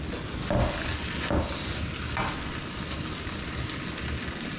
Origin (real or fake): real